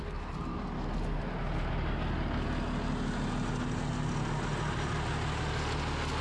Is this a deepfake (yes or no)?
no